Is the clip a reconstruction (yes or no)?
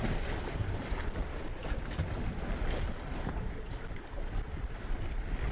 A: no